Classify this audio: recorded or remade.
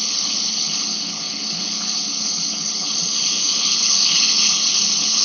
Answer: remade